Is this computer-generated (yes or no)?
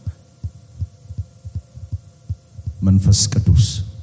no